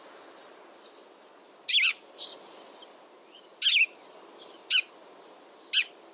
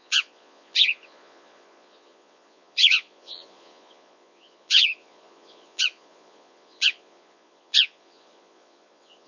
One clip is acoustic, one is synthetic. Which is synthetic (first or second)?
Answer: second